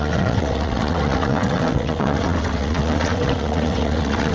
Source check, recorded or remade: remade